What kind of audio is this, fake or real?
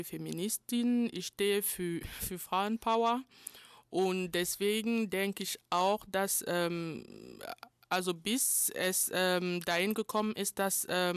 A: real